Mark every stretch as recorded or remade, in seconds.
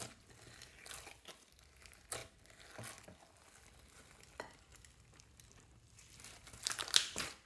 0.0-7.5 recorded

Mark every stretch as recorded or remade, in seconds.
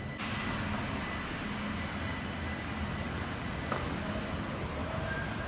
0.0-4.8 recorded; 4.8-5.5 remade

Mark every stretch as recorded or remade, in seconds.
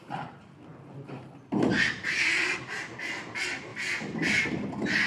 0.0-5.1 recorded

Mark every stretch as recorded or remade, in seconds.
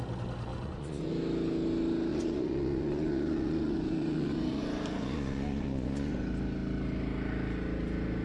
0.0-0.5 recorded; 0.5-1.1 remade; 1.1-2.1 recorded; 2.1-6.1 remade; 6.1-8.2 recorded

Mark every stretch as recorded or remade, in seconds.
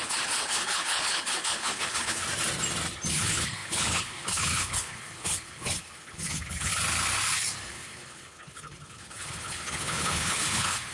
0.0-2.2 remade; 2.2-3.1 recorded; 3.1-6.7 remade; 6.7-7.7 recorded; 7.7-10.9 remade